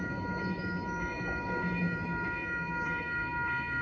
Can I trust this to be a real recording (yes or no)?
no